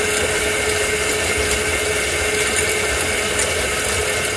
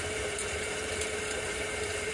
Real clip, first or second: first